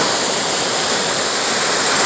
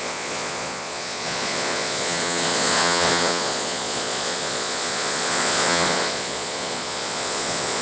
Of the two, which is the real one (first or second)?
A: first